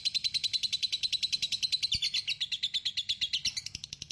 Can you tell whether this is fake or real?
real